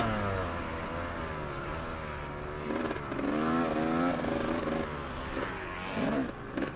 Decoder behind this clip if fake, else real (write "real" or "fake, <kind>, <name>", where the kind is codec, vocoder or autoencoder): real